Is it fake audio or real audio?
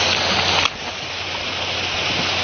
real